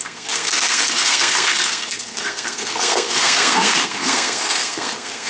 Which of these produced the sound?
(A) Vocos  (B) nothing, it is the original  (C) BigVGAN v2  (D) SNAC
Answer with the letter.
D